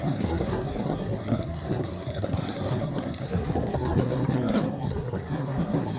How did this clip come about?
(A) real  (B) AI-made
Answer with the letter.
B